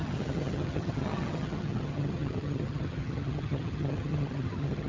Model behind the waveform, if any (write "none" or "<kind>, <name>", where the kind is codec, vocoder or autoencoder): vocoder, HiFi-GAN